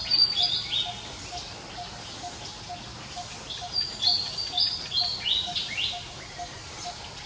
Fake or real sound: real